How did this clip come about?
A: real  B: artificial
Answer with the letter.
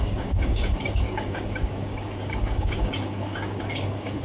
B